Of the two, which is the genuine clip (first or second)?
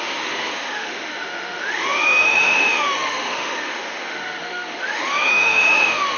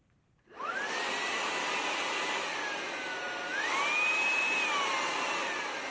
second